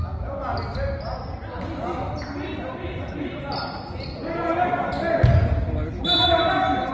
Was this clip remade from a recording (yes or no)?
no